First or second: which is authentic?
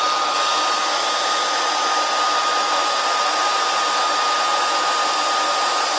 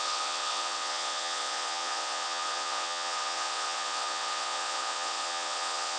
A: first